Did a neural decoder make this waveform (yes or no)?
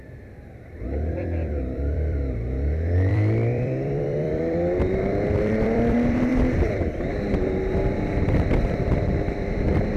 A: yes